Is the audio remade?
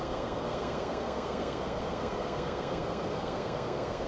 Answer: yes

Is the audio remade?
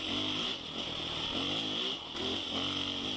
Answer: no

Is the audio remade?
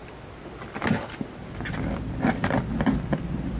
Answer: no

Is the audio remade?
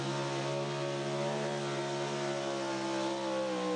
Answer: no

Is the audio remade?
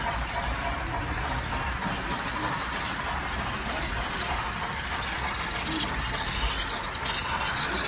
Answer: no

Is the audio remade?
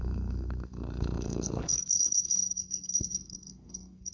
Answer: yes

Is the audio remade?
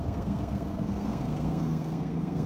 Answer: yes